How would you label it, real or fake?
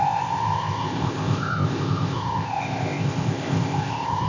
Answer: fake